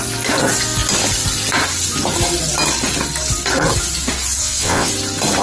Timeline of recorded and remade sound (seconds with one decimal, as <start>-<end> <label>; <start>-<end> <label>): 0.0-4.4 recorded; 4.4-4.9 remade; 4.9-5.4 recorded